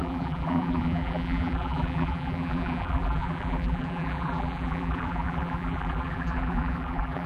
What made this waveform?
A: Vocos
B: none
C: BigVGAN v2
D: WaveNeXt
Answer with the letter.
C